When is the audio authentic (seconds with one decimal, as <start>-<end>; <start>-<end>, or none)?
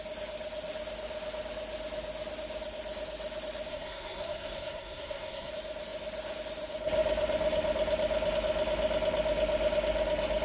0.0-3.7; 5.5-10.4